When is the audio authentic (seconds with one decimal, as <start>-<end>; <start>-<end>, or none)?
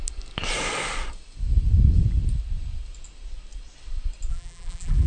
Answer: 0.0-4.3